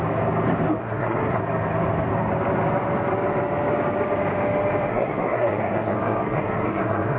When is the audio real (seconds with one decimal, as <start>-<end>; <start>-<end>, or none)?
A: 0.0-0.8; 1.4-4.9